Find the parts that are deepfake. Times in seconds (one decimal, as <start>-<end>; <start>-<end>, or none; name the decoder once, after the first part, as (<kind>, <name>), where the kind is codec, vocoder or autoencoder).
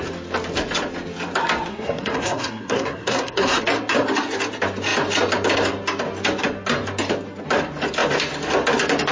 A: 1.7-3.6 (codec, SNAC)